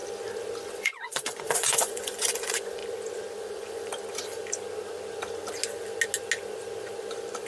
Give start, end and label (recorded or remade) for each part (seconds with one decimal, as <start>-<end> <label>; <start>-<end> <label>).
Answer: 0.0-0.7 recorded; 0.7-2.8 remade; 2.8-3.4 recorded; 3.4-3.9 remade; 3.9-7.5 recorded

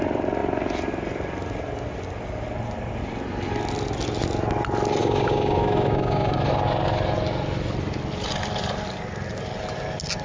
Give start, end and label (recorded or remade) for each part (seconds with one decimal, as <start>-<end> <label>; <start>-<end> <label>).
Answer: 0.0-5.0 recorded; 5.0-6.4 remade; 6.4-10.2 recorded

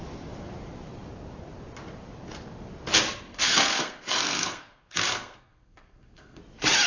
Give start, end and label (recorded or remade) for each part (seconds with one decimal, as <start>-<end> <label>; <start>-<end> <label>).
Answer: 0.0-3.3 recorded; 3.3-6.4 remade; 6.4-6.9 recorded

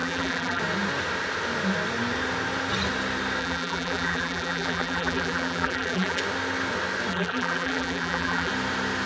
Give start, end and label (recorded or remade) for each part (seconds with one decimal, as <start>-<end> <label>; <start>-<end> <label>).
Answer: 0.0-0.6 remade; 0.6-3.4 recorded; 3.4-6.2 remade; 6.2-7.1 recorded; 7.1-8.5 remade; 8.5-9.1 recorded

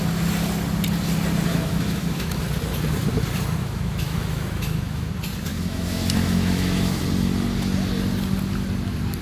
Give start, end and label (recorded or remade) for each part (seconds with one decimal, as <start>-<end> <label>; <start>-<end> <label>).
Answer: 0.0-1.5 recorded; 1.5-2.4 remade; 2.4-3.6 recorded; 3.6-5.1 remade; 5.1-5.5 recorded; 5.5-7.0 remade; 7.0-9.2 recorded

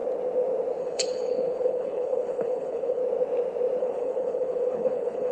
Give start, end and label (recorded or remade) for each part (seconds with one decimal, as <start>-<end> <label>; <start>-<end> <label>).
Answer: 0.0-0.8 recorded; 0.8-3.0 remade; 3.0-3.8 recorded; 3.8-5.3 remade